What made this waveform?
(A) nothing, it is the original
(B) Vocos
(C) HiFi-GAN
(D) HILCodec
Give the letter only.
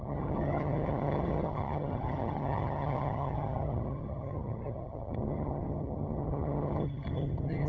C